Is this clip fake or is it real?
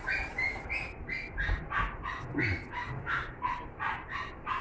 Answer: fake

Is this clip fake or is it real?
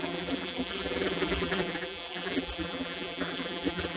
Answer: fake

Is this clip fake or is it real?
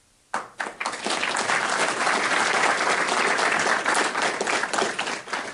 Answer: real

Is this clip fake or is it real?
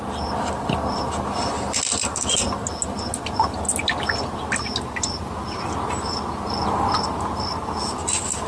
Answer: real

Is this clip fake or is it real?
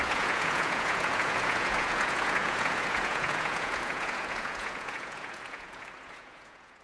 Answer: fake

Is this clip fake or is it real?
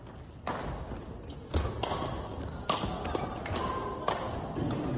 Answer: real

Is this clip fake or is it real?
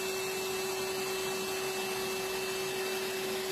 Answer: real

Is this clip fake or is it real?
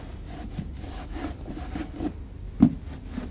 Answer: real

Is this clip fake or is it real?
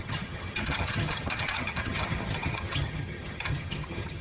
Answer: fake